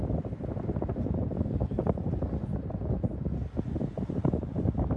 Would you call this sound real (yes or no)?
yes